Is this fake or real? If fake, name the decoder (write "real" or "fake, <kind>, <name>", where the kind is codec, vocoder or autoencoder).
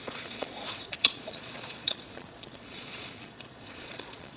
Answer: fake, vocoder, Vocos